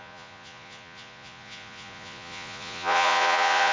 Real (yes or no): no